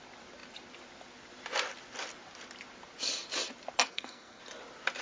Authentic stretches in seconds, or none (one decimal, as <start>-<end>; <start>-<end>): 0.0-3.9; 4.4-5.0